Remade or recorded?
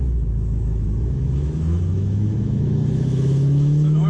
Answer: remade